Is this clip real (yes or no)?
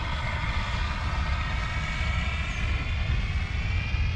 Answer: yes